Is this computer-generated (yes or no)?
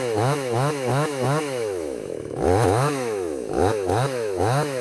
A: yes